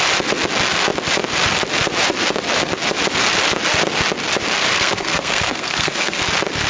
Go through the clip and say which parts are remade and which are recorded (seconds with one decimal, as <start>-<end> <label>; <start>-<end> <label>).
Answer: 0.0-4.7 recorded; 4.7-6.2 remade; 6.2-6.7 recorded